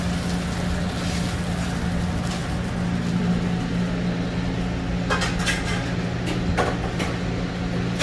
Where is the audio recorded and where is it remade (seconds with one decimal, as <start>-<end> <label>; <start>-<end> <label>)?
0.0-8.0 recorded